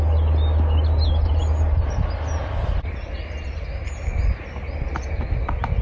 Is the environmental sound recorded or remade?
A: recorded